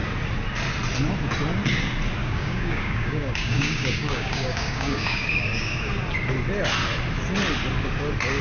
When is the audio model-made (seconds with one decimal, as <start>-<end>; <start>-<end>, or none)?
2.2-5.9

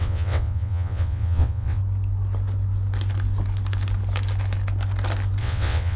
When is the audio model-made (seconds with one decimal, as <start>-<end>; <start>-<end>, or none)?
0.0-1.8; 5.4-6.0

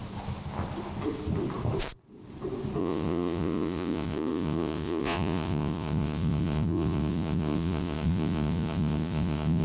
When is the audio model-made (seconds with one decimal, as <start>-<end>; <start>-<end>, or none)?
2.8-9.6

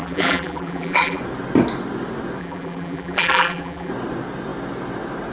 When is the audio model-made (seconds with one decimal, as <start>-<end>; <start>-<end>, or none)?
0.0-1.2; 2.4-3.9

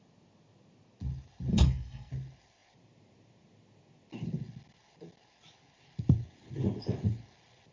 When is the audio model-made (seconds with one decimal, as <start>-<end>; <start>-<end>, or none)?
1.5-2.1

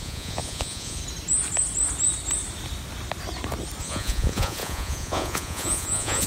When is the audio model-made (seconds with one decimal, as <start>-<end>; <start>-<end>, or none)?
0.0-1.0; 3.8-6.3

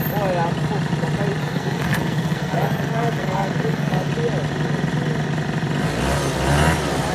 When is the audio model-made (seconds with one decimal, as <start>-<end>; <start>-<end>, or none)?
1.4-4.1

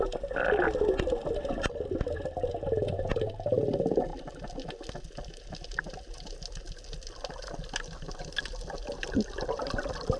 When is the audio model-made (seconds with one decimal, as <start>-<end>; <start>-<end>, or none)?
none